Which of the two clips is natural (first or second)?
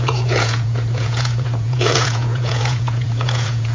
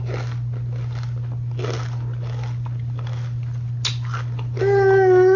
second